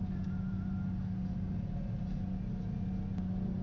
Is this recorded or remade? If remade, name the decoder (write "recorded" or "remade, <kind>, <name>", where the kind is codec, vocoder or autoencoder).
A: recorded